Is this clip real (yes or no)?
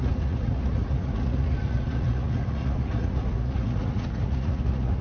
no